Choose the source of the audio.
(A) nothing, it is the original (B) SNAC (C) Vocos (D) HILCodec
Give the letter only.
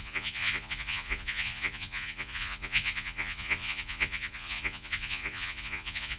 C